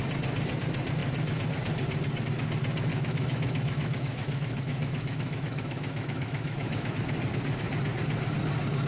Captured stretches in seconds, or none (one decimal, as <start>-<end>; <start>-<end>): 0.0-2.9; 6.9-8.9